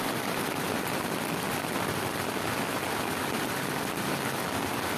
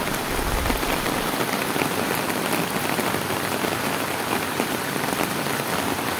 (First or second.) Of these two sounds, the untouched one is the first